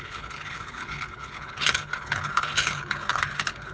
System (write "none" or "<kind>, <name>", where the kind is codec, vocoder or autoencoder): codec, HILCodec